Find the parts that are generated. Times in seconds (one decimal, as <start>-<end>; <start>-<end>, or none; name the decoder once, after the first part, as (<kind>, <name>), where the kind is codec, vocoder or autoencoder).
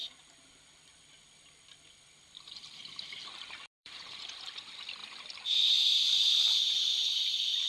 0.0-5.0 (vocoder, BigVGAN v2); 5.8-7.7